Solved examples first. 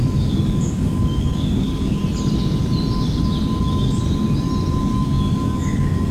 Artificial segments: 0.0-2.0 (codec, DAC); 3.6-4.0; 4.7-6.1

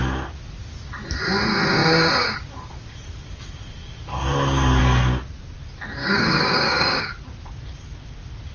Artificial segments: 6.0-7.0 (codec, DAC)

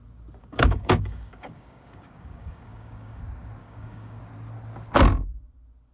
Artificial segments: 0.4-3.2 (codec, DAC); 3.6-4.2

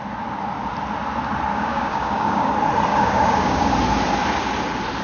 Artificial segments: 1.5-2.5 (codec, DAC); 2.9-3.7